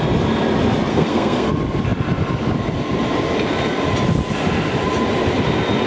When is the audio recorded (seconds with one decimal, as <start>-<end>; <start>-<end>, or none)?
0.0-0.9; 1.5-5.9